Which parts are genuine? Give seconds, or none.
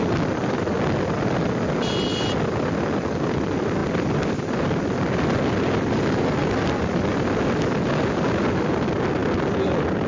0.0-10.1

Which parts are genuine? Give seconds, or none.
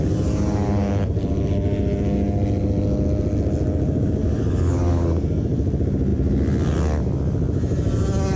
0.0-4.2; 5.2-8.4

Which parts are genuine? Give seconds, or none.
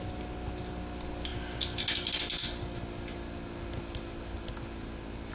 0.0-5.3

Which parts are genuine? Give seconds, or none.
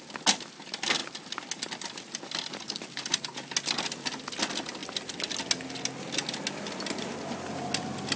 0.0-8.2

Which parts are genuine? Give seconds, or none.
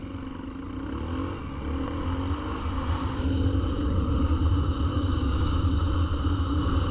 0.0-4.9; 5.5-6.9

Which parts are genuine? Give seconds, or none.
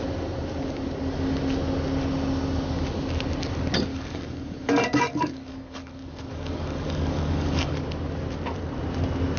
0.0-3.9; 7.8-9.4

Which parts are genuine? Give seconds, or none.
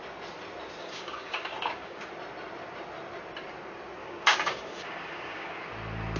0.0-0.8; 2.1-4.0; 5.7-6.2